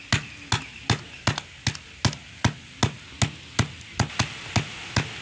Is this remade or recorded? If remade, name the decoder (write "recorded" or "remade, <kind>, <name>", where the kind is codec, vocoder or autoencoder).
recorded